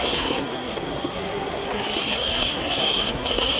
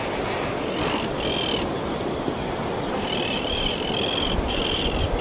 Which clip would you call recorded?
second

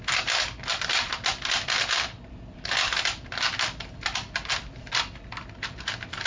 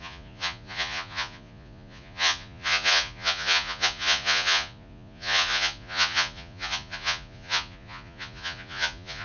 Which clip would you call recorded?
first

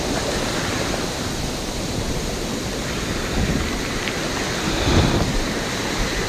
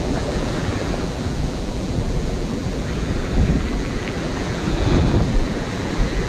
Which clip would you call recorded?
first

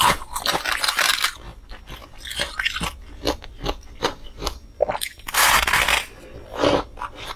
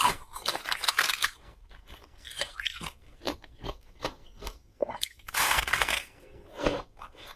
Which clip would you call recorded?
first